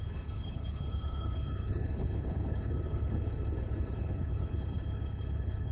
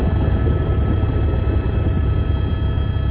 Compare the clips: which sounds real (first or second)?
second